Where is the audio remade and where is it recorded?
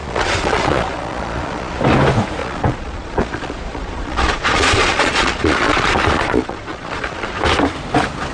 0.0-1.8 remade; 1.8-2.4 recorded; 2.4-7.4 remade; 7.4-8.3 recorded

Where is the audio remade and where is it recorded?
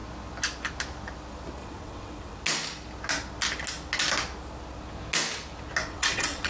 0.0-1.6 recorded; 1.6-2.4 remade; 2.4-5.8 recorded; 5.8-6.5 remade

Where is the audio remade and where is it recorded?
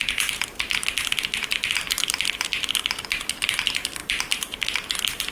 0.0-1.5 recorded; 1.5-2.0 remade; 2.0-4.0 recorded; 4.0-5.3 remade